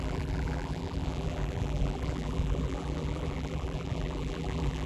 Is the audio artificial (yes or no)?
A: yes